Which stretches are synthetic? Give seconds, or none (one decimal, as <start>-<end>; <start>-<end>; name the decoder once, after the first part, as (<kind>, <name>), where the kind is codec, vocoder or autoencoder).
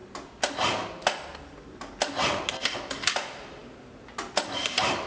none